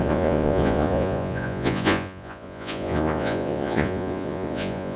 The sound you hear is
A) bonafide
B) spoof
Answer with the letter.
B